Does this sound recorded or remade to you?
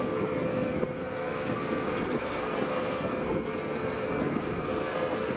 remade